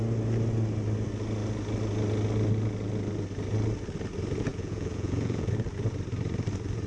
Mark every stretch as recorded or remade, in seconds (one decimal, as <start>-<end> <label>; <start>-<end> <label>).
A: 0.0-4.5 recorded; 4.5-5.5 remade; 5.5-6.9 recorded